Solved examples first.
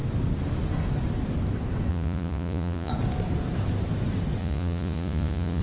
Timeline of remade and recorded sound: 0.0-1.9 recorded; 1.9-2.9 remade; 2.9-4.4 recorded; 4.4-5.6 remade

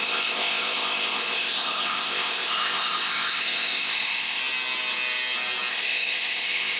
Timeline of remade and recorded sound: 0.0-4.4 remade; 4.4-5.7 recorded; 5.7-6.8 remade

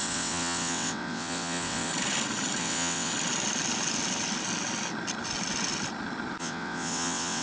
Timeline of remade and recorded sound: 0.0-1.9 remade; 1.9-2.6 recorded; 2.6-3.1 remade; 3.1-6.4 recorded; 6.4-7.4 remade